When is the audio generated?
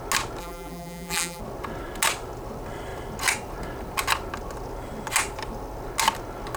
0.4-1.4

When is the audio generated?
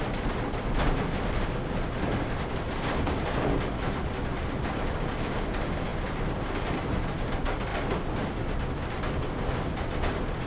none